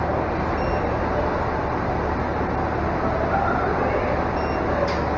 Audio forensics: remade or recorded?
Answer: recorded